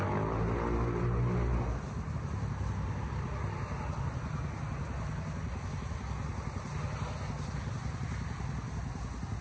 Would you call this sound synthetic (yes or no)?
no